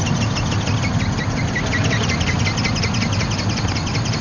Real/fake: real